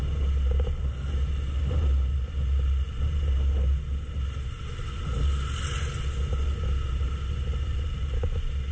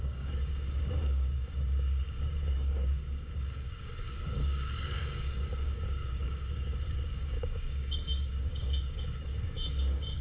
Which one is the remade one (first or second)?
second